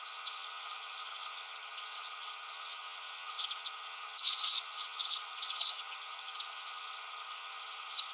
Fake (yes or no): yes